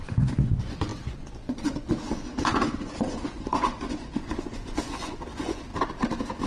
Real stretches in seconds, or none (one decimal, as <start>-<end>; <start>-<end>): 5.7-6.5